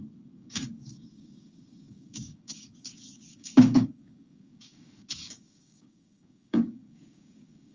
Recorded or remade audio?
remade